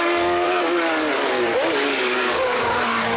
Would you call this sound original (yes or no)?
no